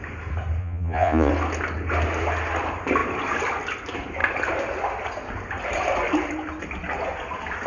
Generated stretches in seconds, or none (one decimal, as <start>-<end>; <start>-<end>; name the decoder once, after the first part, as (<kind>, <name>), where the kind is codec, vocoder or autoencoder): 0.6-1.3 (vocoder, Vocos)